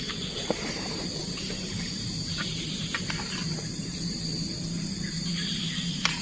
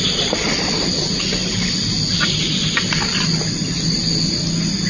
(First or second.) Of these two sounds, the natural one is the second